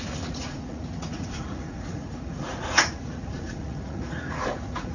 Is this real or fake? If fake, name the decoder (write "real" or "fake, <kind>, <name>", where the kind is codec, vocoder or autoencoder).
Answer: fake, vocoder, Vocos